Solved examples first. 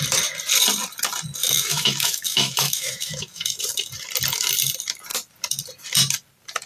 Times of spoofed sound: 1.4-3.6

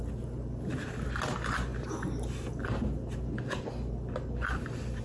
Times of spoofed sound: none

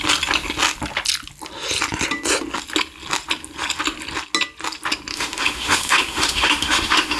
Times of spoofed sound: 5.1-7.2

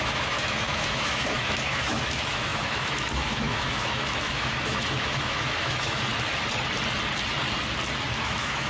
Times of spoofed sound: 0.0-6.1; 8.2-8.7

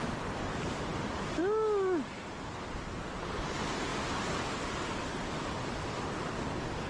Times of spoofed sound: none